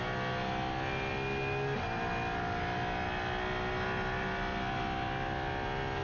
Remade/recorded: recorded